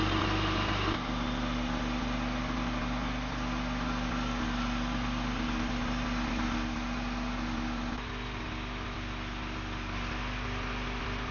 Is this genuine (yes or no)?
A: yes